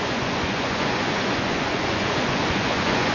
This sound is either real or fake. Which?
fake